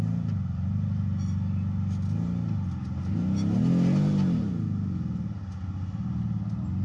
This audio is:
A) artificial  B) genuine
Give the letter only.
B